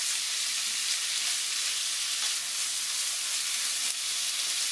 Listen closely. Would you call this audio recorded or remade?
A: recorded